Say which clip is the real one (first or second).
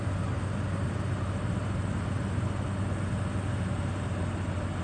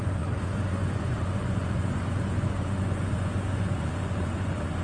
first